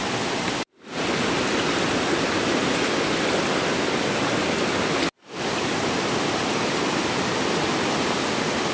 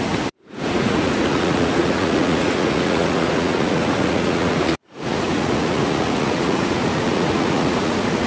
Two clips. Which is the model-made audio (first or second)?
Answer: second